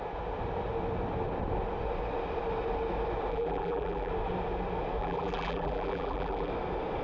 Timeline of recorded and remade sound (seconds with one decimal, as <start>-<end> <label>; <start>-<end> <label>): 0.0-3.3 recorded; 3.3-4.1 remade; 4.1-5.0 recorded; 5.0-6.5 remade; 6.5-7.0 recorded

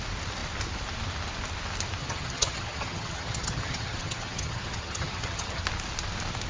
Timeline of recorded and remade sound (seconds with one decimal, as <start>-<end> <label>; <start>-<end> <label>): 0.0-2.0 recorded; 2.0-5.6 remade; 5.6-6.5 recorded

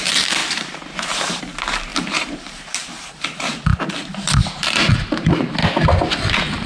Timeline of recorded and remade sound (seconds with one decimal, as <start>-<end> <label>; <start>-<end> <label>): 0.0-5.6 remade; 5.6-6.7 recorded

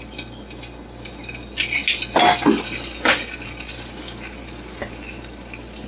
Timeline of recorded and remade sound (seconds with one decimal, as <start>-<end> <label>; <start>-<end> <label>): 0.0-5.9 recorded

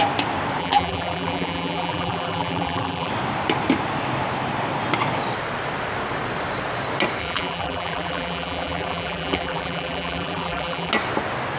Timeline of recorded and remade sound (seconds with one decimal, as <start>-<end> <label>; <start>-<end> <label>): 0.0-0.6 recorded; 0.6-3.1 remade; 3.1-7.2 recorded; 7.2-10.9 remade; 10.9-11.6 recorded

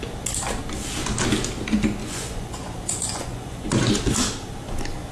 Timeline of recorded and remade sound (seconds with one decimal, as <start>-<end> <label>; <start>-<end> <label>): 0.0-2.0 recorded; 2.0-3.9 remade; 3.9-5.1 recorded